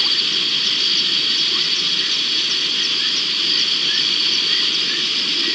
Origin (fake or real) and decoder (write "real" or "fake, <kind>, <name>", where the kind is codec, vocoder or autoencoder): real